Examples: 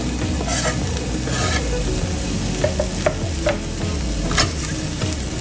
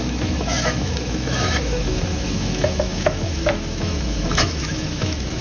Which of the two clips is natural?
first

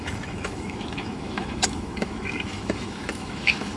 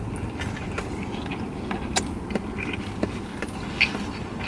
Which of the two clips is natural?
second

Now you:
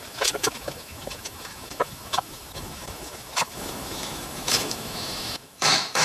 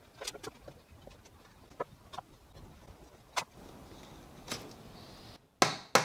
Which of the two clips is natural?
second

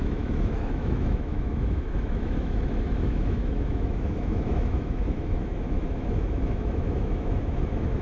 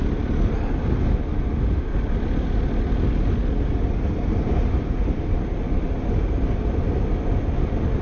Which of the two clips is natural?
second